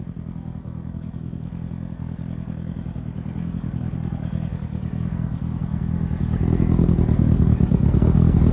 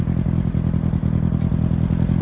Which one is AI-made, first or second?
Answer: first